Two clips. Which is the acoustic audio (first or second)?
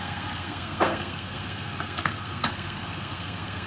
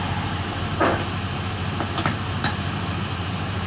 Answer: second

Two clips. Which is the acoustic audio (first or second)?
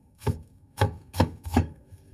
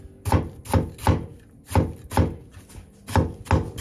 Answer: second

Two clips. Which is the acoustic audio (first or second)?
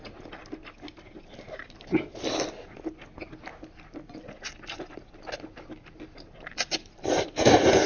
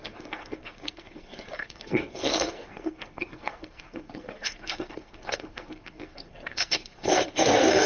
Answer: first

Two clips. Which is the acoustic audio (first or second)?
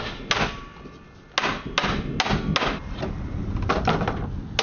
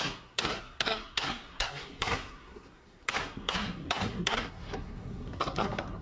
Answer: first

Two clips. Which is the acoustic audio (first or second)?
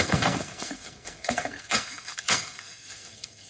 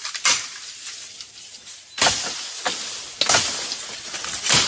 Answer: second